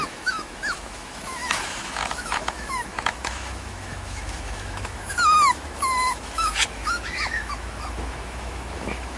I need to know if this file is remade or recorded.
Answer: remade